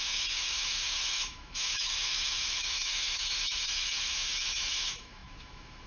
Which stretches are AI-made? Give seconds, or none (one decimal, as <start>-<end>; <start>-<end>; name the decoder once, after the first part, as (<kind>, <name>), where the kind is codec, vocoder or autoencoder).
0.0-5.9 (autoencoder, DAC-VAE)